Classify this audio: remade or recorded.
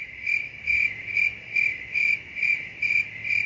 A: recorded